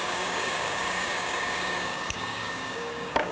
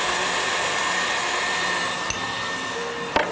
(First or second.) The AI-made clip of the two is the first